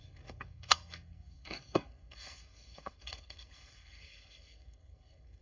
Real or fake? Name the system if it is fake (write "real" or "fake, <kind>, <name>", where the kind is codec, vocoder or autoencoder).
fake, codec, SNAC